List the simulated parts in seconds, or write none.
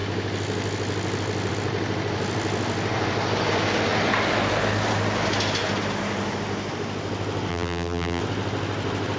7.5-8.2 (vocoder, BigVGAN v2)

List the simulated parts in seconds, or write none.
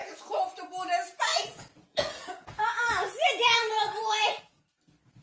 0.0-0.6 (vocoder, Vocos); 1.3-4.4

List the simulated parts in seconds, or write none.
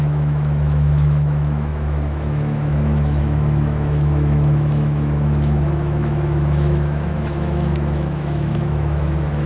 0.0-9.5 (autoencoder, DAC-VAE)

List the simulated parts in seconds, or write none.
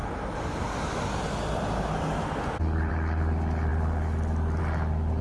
none